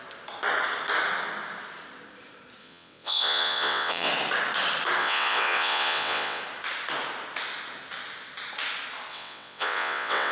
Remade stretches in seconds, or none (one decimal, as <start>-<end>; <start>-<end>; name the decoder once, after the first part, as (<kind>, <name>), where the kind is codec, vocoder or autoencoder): 2.6-4.1 (vocoder, WaveNeXt); 5.0-6.4; 9.1-10.3